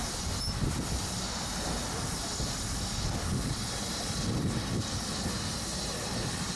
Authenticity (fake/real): real